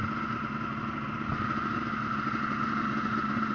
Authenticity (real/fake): real